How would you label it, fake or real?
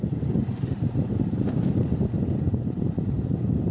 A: fake